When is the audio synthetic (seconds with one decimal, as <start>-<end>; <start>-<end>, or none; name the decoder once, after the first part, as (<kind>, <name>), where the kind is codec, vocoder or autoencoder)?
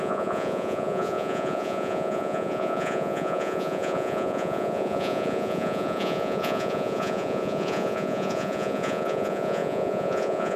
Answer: 0.0-10.6 (vocoder, Vocos)